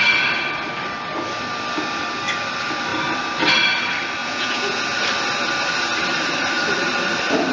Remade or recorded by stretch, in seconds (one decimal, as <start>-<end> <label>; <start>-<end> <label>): 0.0-4.2 recorded; 4.2-4.8 remade; 4.8-7.5 recorded